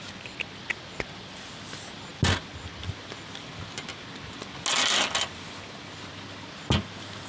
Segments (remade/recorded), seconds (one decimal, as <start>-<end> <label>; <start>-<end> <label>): 0.0-7.3 recorded